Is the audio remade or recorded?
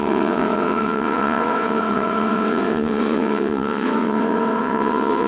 remade